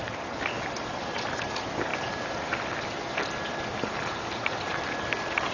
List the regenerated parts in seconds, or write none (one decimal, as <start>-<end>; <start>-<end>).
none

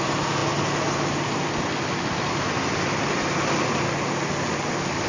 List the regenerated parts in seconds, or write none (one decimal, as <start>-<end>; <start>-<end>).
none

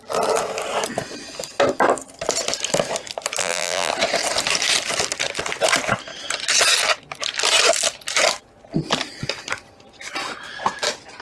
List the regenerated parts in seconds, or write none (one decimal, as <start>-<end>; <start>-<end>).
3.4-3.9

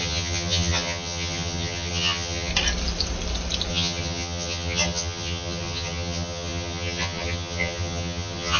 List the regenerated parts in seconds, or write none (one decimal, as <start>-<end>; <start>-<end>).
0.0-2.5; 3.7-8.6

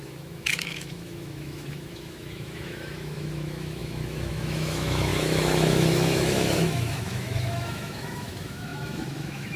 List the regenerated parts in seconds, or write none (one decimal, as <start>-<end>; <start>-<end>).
0.0-9.6